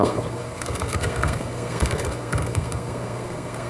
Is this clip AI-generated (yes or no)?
yes